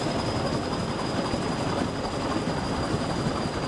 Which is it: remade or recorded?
recorded